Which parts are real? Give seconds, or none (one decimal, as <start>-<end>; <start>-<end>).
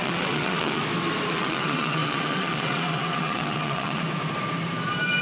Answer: 0.8-1.3; 4.0-5.2